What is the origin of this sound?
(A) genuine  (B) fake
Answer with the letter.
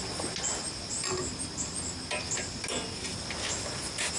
A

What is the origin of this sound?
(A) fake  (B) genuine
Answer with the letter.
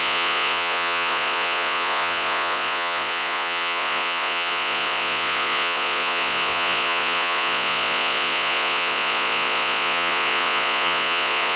A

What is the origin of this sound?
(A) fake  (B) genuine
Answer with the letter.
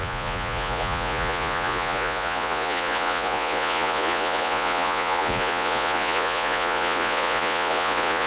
A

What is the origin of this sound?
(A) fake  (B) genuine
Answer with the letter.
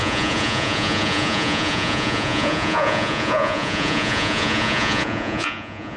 A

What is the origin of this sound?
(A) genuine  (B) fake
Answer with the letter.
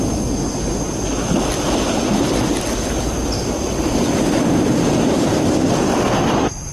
A